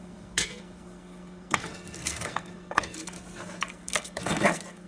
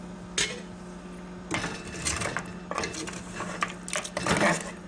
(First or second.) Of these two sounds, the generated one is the first